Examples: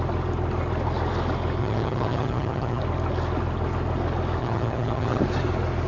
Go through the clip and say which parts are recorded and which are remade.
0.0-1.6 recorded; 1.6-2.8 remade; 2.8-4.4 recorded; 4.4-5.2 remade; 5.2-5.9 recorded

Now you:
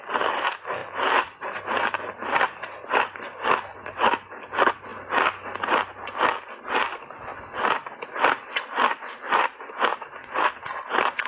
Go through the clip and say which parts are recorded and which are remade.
0.0-11.3 recorded